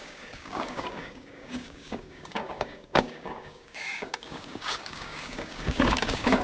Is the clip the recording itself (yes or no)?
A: no